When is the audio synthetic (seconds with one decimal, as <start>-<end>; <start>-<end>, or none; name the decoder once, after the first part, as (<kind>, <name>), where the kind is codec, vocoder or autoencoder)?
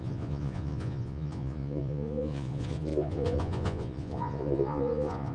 0.0-5.3 (vocoder, Vocos)